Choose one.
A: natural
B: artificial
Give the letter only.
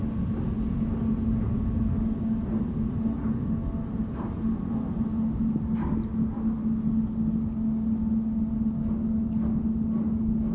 A